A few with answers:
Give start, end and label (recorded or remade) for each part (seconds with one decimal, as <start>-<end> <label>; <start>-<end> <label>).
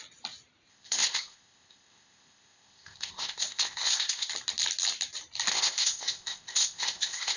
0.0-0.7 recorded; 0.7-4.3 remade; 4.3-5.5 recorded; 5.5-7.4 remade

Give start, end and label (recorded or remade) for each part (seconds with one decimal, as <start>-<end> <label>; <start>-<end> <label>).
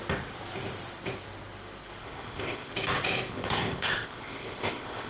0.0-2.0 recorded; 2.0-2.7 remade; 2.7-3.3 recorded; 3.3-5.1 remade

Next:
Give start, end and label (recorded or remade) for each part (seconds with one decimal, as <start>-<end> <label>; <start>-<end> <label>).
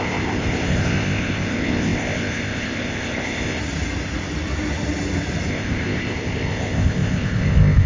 0.0-3.6 remade; 3.6-5.5 recorded; 5.5-7.9 remade